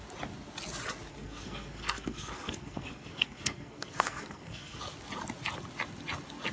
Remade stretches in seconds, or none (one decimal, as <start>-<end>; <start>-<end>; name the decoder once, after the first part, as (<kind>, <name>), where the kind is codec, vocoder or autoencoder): 1.1-4.8 (codec, SNAC)